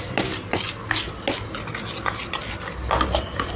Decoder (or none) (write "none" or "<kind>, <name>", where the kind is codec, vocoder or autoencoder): none